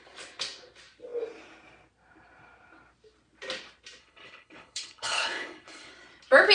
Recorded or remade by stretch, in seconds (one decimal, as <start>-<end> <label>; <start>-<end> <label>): 0.0-4.0 recorded; 4.0-5.9 remade; 5.9-6.5 recorded